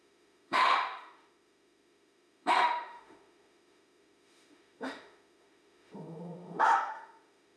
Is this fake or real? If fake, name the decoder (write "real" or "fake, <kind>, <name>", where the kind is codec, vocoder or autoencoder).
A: fake, autoencoder, DAC-VAE